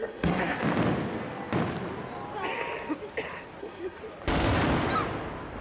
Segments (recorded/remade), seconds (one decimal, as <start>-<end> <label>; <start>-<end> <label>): 0.0-0.6 remade; 0.6-3.6 recorded; 3.6-4.0 remade; 4.0-5.6 recorded